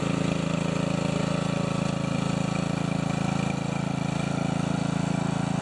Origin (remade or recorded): recorded